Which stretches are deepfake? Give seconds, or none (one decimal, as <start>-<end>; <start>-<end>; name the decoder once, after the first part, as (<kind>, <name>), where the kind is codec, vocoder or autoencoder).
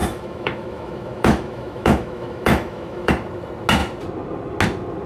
0.0-3.1 (autoencoder, DAC-VAE)